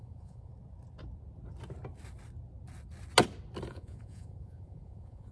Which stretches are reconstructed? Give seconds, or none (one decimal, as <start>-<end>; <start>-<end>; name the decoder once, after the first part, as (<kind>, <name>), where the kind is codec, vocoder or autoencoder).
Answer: 0.0-0.5 (vocoder, Vocos); 3.7-5.3